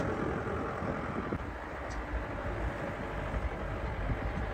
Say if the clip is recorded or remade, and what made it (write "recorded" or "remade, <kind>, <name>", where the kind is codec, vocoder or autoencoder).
recorded